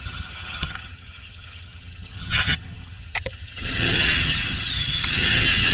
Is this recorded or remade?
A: remade